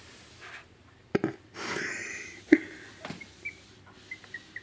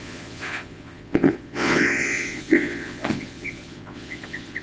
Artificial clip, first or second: second